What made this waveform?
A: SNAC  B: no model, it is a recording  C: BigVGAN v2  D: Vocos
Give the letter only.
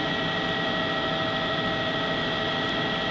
B